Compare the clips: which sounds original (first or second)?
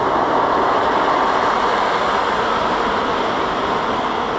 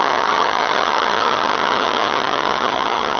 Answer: first